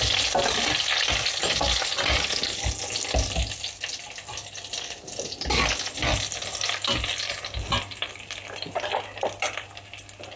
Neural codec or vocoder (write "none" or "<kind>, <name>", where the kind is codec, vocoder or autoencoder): none